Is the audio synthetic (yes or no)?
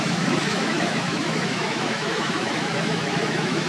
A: yes